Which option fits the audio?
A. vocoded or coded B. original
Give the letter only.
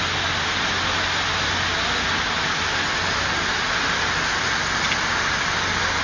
B